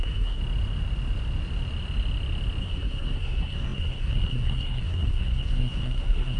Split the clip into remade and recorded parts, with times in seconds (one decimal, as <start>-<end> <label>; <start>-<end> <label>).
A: 0.0-0.4 remade; 0.4-2.6 recorded; 2.6-6.4 remade